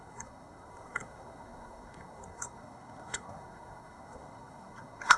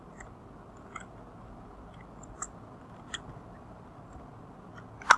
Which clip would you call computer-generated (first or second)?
first